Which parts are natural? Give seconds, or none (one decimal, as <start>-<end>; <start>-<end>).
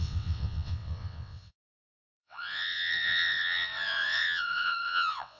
none